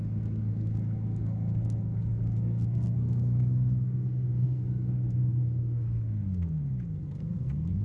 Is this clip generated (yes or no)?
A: yes